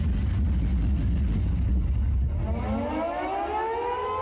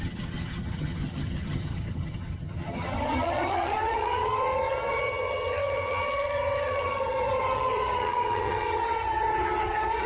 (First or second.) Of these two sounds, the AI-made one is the second